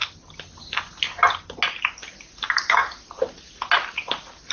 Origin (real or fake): real